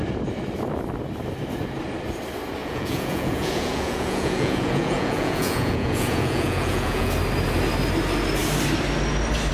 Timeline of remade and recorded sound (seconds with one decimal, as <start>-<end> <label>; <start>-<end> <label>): 0.0-2.6 recorded; 2.6-7.1 remade; 7.1-9.5 recorded